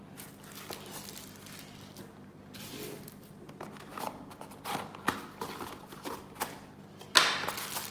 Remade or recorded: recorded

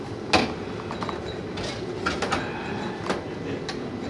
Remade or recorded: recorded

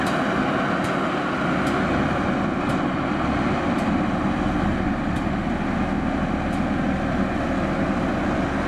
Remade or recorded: recorded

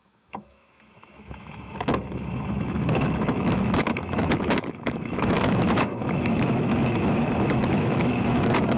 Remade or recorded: remade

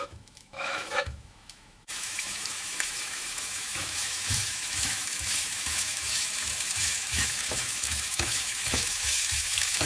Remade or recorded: remade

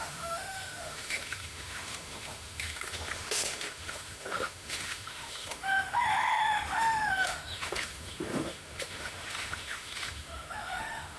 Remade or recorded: remade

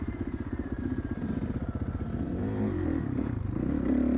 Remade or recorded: recorded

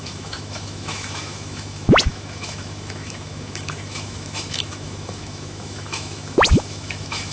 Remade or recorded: remade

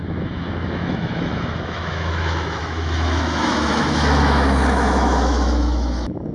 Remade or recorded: remade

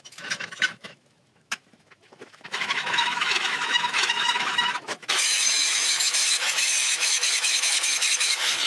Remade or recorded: remade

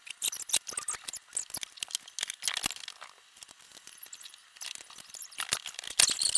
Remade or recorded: recorded